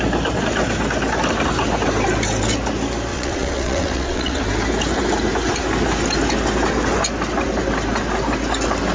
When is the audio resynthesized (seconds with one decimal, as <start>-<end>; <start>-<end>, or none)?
3.1-4.4

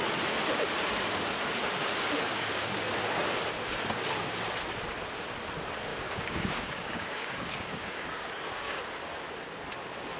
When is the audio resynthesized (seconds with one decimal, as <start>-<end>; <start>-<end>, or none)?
2.3-3.0; 5.9-8.8

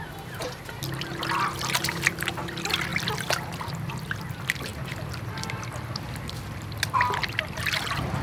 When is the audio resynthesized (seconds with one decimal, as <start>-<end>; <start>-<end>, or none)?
none

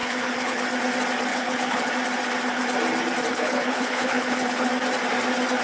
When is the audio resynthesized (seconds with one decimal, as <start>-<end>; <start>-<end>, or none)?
0.0-0.6; 1.3-1.9; 3.3-4.7

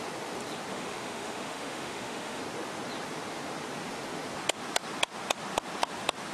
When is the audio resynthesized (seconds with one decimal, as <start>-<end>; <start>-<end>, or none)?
0.7-2.4

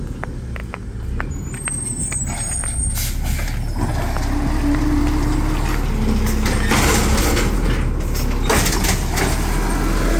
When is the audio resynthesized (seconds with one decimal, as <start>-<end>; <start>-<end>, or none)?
none

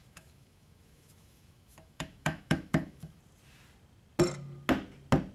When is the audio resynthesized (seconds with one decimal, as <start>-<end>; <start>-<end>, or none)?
0.0-3.2

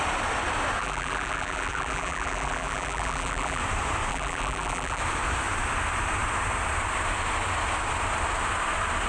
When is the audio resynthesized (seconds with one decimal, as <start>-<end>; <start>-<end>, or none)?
0.8-3.6; 4.1-5.0